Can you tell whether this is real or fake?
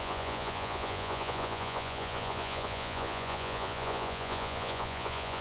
fake